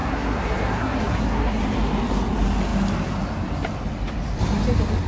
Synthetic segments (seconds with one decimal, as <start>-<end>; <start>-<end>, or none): 0.0-1.6